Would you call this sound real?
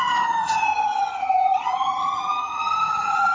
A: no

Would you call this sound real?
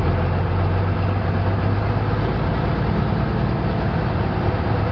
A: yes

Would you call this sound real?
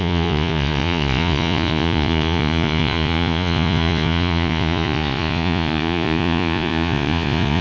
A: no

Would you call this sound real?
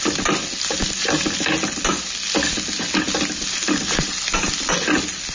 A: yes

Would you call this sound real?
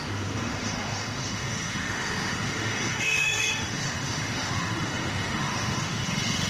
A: no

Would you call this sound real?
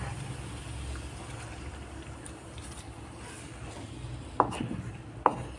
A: yes